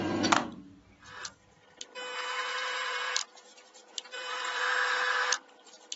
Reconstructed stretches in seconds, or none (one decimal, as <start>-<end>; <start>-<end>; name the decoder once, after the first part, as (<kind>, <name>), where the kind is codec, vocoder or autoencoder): 0.5-1.2 (vocoder, BigVGAN v2); 2.4-4.6